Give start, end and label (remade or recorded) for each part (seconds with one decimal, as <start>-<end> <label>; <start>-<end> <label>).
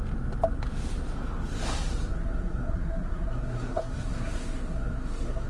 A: 0.0-2.1 recorded; 2.1-5.5 remade